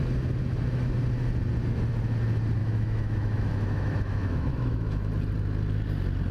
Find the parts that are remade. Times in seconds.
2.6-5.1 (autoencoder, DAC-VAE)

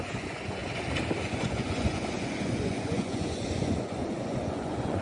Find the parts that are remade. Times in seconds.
0.0-0.6 (vocoder, Vocos); 1.2-5.0

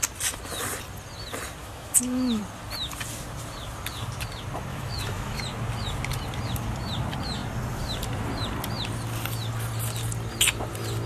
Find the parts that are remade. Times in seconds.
1.6-2.4 (autoencoder, DAC-VAE); 4.7-5.4

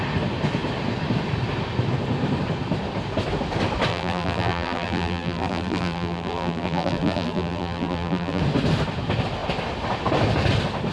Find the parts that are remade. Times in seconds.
3.9-8.4 (vocoder, BigVGAN v2)

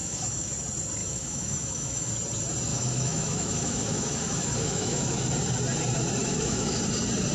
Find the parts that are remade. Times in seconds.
0.0-0.5 (autoencoder, DAC-VAE); 1.0-2.1; 2.7-5.2; 6.2-6.8